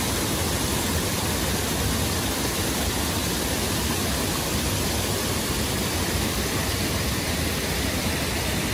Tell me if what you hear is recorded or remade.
recorded